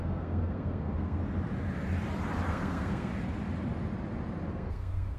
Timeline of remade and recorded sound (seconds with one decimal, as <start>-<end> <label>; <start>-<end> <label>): 0.0-1.2 remade; 1.2-2.5 recorded; 2.5-3.1 remade; 3.1-4.5 recorded; 4.5-5.2 remade